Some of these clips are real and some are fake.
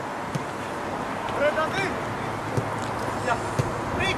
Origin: real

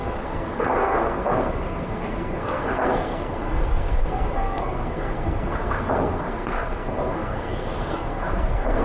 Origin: fake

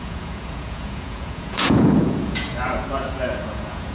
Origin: fake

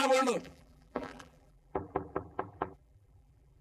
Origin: fake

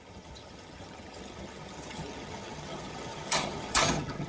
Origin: fake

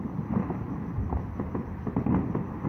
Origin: real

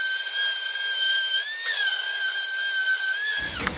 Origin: real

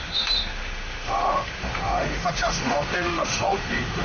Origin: fake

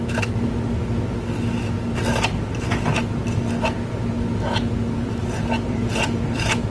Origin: real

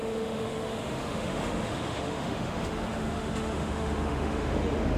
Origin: fake